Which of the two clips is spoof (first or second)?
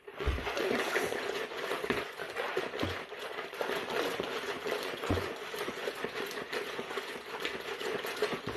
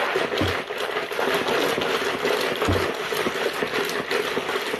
first